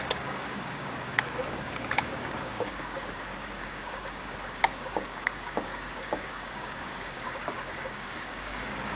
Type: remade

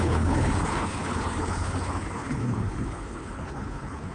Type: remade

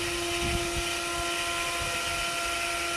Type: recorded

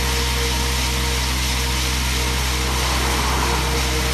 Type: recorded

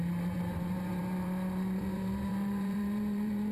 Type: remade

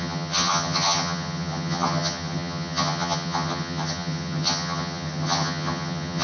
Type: remade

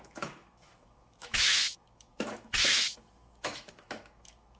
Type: remade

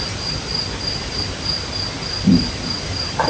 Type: recorded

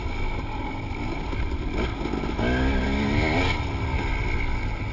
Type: recorded